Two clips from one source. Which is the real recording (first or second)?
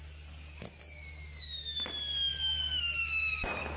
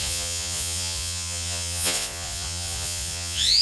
first